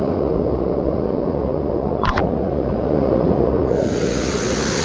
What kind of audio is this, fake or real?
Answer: fake